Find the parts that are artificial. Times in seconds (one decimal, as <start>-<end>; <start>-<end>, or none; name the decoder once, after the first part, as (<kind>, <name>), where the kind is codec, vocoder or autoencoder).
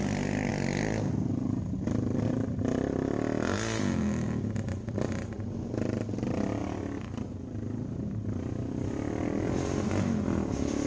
none